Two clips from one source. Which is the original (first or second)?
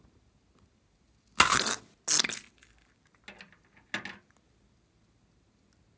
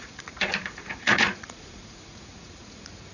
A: first